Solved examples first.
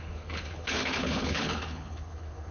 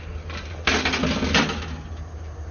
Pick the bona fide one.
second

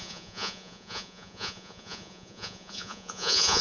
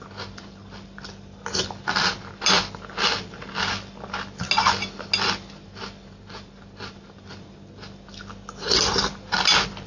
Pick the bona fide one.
second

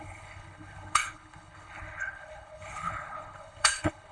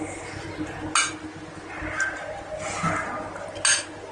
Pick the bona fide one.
second